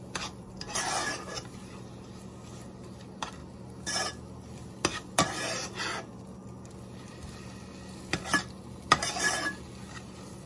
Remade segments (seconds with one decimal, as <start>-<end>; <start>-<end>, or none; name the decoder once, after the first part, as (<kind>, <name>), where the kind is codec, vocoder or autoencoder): none